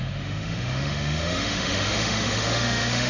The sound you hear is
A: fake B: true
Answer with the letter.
A